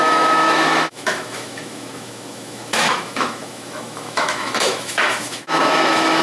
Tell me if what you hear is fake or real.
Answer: fake